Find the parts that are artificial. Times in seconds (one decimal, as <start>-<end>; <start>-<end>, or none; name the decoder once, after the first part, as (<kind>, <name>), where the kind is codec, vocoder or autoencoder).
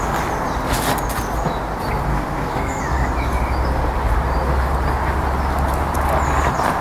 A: 2.1-2.8 (codec, SNAC)